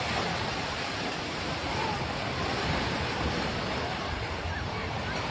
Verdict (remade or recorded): remade